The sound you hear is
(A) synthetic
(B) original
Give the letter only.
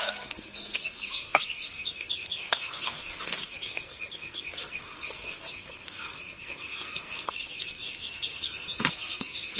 A